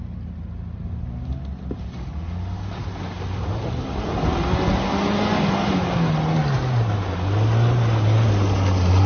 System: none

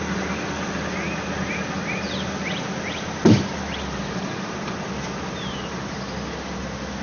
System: none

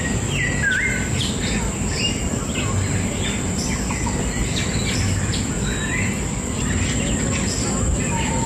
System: none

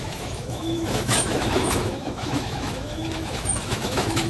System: autoencoder, DAC-VAE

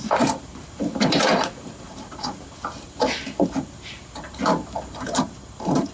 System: vocoder, BigVGAN v2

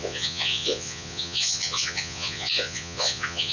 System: vocoder, Vocos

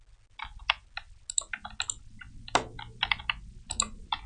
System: none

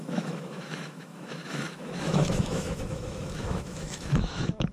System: autoencoder, DAC-VAE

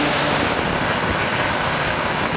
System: none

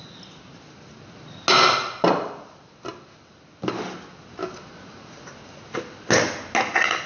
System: none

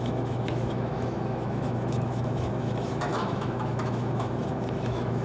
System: autoencoder, DAC-VAE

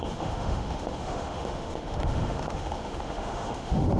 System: autoencoder, DAC-VAE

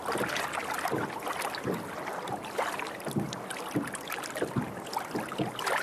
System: none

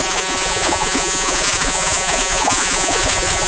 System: vocoder, Vocos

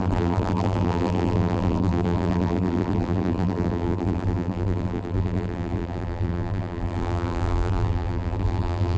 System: vocoder, BigVGAN v2